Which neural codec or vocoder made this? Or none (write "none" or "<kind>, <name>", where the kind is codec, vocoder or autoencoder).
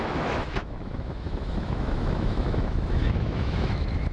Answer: autoencoder, DAC-VAE